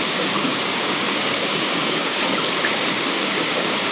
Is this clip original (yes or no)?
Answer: no